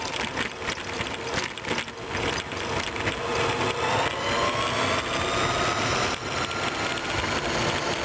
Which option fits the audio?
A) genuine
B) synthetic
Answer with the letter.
A